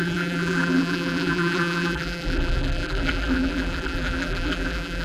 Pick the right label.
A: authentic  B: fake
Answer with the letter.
B